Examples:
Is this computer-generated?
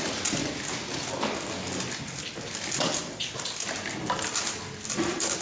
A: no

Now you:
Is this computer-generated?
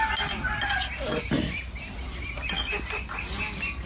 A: no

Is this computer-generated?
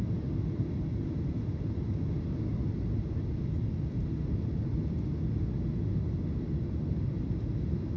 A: no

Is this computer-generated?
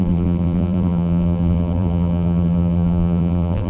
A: yes